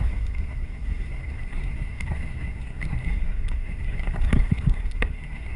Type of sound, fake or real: fake